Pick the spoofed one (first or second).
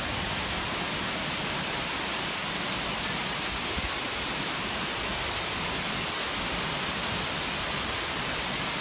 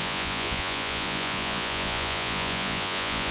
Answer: second